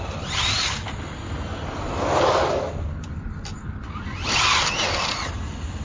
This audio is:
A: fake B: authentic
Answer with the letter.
B